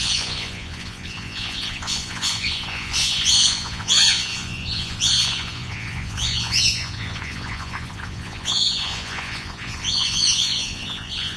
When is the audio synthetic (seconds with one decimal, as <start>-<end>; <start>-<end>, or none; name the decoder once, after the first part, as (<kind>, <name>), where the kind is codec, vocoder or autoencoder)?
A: 0.0-11.4 (vocoder, Vocos)